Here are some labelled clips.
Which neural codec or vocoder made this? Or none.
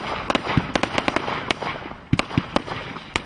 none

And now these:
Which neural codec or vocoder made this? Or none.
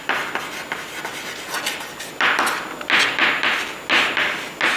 none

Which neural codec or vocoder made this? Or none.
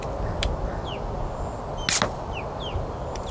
none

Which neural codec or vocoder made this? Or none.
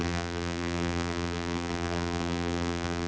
vocoder, BigVGAN v2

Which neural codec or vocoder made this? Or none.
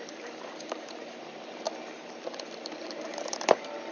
vocoder, BigVGAN v2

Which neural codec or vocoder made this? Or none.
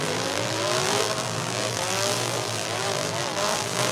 vocoder, BigVGAN v2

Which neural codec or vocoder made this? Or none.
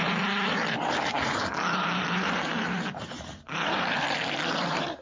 vocoder, BigVGAN v2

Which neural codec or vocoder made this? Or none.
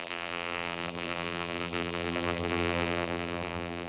vocoder, BigVGAN v2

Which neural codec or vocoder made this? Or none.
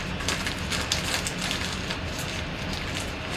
none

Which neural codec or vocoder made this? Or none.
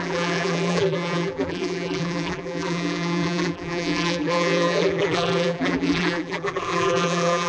vocoder, BigVGAN v2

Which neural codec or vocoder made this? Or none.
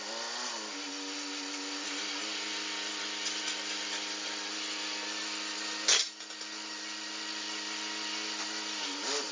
none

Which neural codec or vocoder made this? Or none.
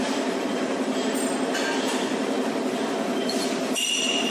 vocoder, BigVGAN v2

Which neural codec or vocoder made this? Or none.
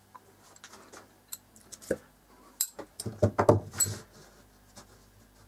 none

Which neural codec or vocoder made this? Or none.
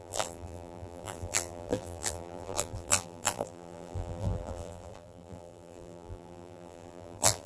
vocoder, BigVGAN v2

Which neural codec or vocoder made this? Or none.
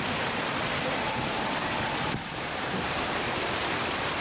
vocoder, BigVGAN v2